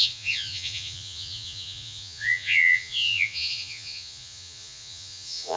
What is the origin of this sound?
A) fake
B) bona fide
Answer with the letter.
A